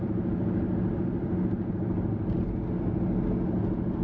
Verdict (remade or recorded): recorded